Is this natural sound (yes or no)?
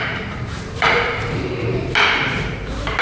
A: no